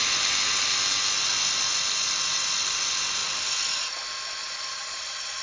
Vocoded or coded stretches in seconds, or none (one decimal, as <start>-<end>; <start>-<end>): 4.4-5.4